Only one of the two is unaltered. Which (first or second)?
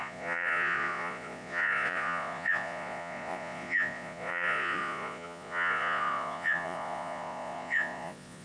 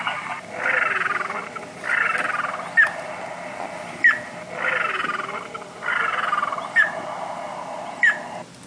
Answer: second